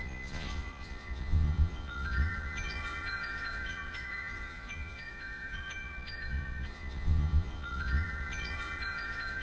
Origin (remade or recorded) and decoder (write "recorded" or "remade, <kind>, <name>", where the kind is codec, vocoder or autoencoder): remade, vocoder, Vocos